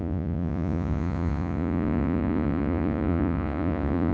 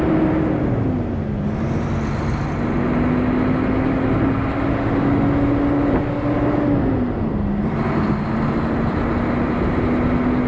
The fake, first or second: first